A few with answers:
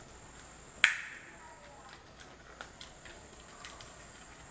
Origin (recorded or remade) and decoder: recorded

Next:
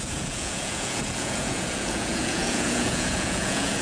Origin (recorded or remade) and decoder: remade, vocoder, Vocos